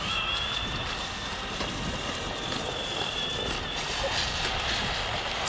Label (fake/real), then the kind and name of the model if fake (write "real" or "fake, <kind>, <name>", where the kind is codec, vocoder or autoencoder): real